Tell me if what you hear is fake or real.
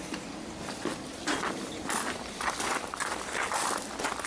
real